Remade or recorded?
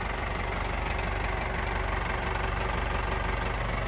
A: recorded